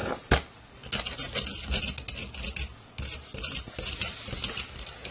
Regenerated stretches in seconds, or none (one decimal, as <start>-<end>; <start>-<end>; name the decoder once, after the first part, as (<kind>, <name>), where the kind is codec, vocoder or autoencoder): none